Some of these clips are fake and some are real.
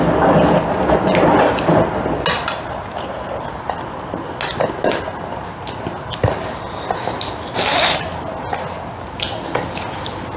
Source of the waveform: real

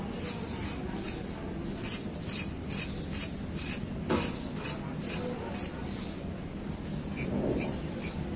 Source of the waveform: real